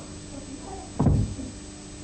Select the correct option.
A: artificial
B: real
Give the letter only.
B